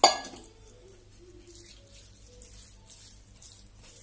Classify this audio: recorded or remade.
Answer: recorded